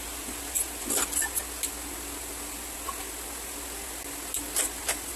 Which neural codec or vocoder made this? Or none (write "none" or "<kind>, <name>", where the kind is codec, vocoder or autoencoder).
none